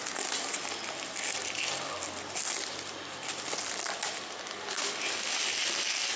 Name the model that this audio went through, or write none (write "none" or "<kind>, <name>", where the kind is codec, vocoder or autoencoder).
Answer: none